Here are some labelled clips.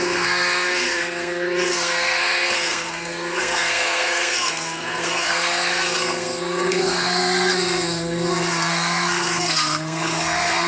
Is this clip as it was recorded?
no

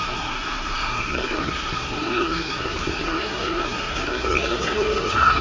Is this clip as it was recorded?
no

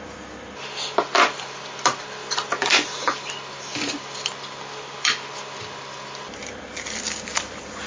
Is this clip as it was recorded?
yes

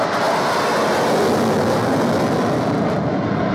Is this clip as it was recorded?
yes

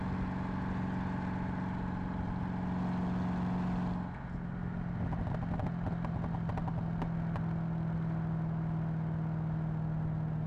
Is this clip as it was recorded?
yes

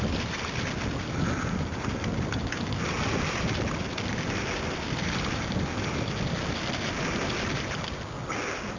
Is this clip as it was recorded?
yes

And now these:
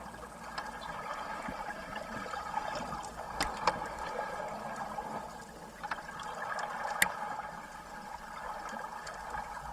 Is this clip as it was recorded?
yes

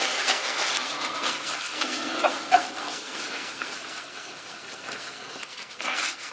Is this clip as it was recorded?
no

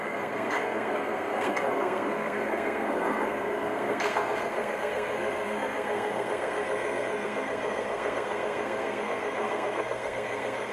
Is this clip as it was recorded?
no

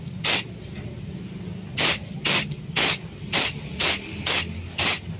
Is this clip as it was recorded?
yes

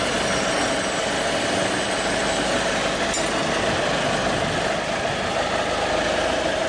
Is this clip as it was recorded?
yes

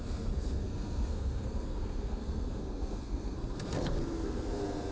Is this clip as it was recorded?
no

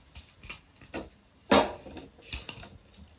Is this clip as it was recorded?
yes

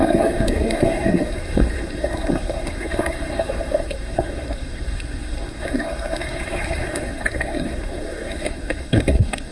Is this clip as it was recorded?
no